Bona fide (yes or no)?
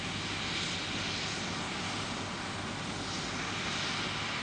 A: yes